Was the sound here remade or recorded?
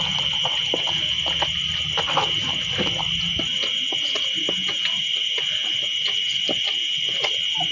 recorded